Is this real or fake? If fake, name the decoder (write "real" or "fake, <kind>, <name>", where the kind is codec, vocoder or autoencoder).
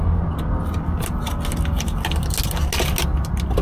real